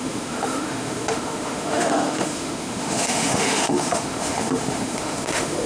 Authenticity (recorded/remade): remade